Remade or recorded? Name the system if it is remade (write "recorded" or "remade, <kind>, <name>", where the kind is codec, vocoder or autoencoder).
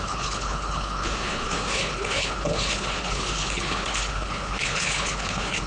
remade, codec, HILCodec